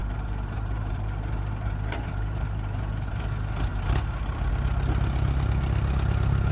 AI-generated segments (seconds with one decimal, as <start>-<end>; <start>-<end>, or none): 0.0-3.1; 3.7-4.5